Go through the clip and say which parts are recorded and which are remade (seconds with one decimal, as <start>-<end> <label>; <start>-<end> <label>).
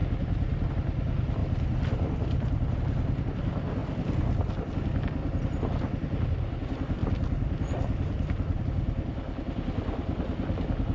0.0-0.7 remade; 0.7-1.4 recorded; 1.4-2.8 remade; 2.8-7.0 recorded; 7.0-8.6 remade; 8.6-10.9 recorded